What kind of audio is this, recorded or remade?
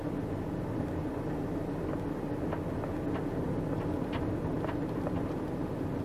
recorded